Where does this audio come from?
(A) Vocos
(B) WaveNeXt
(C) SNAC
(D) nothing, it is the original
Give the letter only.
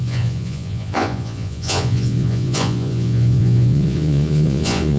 A